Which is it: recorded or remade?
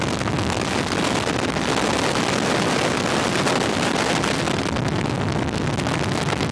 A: recorded